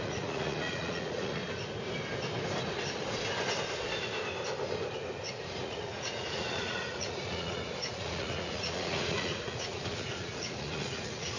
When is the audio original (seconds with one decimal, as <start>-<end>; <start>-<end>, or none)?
1.4-5.6